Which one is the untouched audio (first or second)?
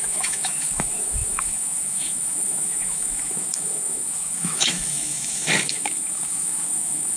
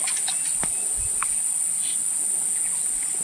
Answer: second